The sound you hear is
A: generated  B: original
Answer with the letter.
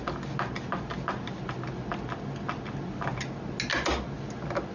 B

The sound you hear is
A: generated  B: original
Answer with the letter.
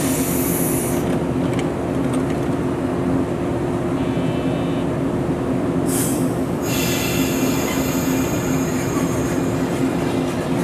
B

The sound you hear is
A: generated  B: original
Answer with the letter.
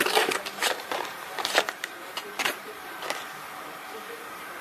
A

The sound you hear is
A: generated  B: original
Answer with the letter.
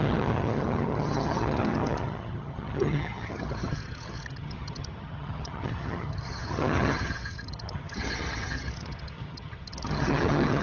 A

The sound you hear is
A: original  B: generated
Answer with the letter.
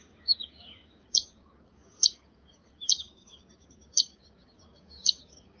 B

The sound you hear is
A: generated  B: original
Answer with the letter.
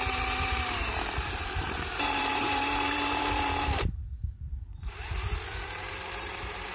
A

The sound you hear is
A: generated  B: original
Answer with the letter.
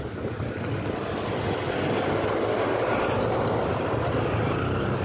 B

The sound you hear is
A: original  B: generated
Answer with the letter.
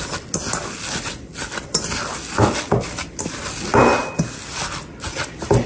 A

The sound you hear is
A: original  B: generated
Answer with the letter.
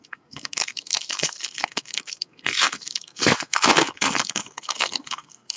B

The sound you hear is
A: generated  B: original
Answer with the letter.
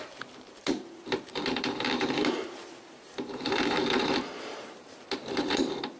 A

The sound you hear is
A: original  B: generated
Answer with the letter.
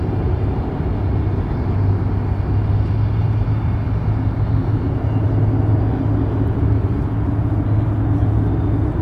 A